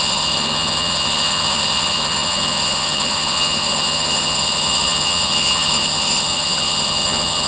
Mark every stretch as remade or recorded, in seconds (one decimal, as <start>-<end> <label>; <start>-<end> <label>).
0.0-7.5 remade